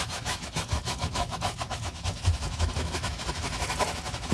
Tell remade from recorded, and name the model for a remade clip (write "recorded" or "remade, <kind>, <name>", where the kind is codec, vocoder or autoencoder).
remade, autoencoder, DAC-VAE